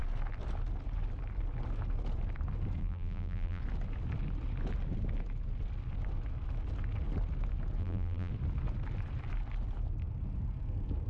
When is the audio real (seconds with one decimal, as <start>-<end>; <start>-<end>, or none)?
0.0-2.8; 3.6-7.8; 8.3-11.1